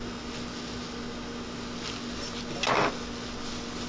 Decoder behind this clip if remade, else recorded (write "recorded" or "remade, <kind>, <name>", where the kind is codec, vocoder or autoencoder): recorded